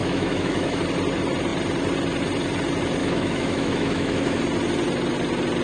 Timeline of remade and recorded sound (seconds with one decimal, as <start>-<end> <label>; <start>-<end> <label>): 0.0-0.8 remade; 0.8-3.0 recorded; 3.0-4.4 remade; 4.4-5.6 recorded